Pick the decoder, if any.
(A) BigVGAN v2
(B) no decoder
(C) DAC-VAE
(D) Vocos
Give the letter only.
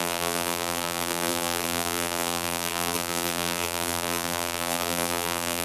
A